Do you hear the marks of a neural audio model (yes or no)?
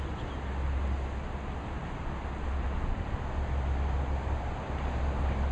no